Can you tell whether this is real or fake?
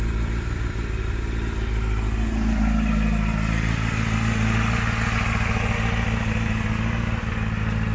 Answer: real